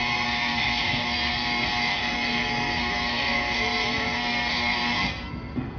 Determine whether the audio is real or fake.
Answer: fake